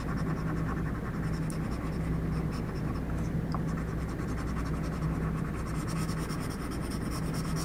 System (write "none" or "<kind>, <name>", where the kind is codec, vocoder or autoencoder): none